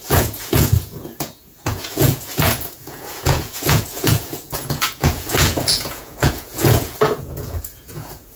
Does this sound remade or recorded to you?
remade